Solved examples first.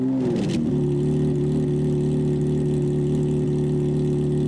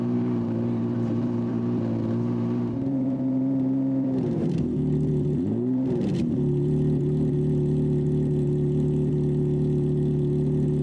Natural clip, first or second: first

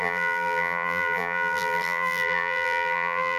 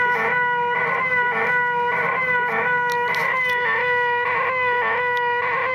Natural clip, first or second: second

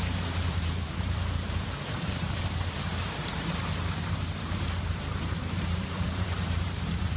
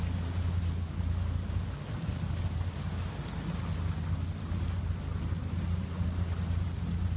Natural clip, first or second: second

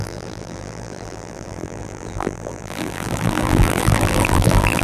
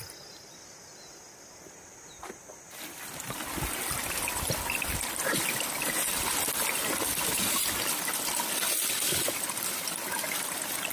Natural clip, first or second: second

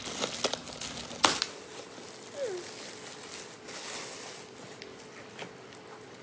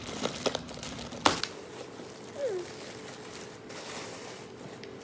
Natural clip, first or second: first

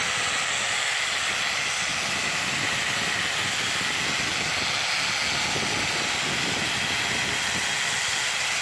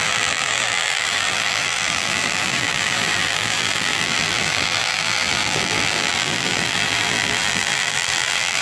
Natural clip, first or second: first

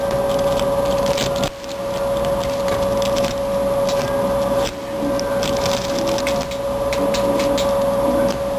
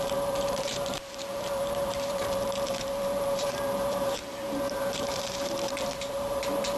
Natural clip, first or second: first